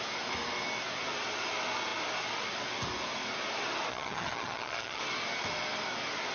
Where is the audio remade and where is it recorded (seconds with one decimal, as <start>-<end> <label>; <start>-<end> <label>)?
0.0-3.9 recorded; 3.9-5.0 remade; 5.0-6.3 recorded